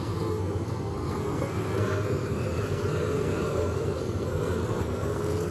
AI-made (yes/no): yes